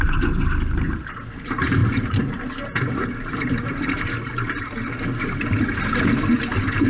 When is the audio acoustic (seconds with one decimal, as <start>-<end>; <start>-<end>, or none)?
0.0-1.8; 5.0-6.9